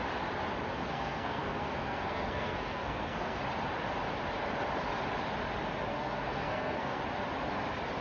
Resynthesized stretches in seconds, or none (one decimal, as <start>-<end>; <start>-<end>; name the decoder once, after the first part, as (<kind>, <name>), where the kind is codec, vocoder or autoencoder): 0.7-3.4 (codec, SNAC); 5.9-7.0